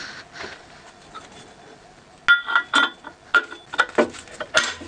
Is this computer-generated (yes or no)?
no